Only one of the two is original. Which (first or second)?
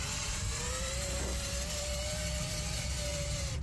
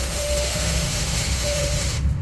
first